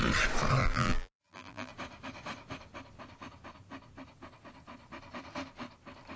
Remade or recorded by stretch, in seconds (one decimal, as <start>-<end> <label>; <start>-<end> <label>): 0.0-0.6 recorded; 0.6-1.7 remade; 1.7-6.2 recorded